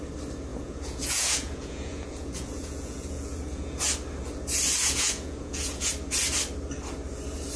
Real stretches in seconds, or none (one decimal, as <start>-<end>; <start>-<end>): 0.0-0.5; 3.8-4.8; 5.9-7.6